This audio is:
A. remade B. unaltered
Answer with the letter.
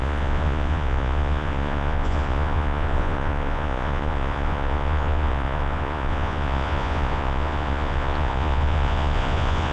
A